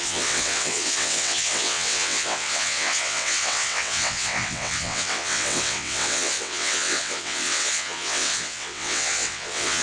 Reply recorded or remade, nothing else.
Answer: remade